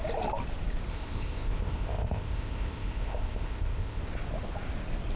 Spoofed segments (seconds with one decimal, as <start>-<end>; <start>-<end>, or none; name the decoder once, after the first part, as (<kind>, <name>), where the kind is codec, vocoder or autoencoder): 0.9-4.0 (codec, ZipCodec)

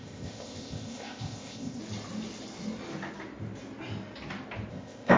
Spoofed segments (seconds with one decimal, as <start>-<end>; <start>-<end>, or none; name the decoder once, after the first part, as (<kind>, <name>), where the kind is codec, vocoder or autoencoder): 0.0-1.8 (codec, ZipCodec); 4.7-5.2